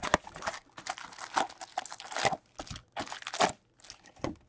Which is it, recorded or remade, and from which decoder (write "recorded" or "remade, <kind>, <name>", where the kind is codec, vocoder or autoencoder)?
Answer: recorded